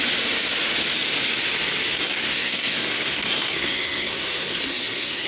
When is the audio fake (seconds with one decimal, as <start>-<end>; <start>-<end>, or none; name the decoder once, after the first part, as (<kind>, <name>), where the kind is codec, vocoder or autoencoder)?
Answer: 1.9-5.3 (codec, SNAC)